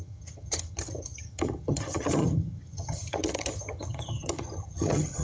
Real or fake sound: fake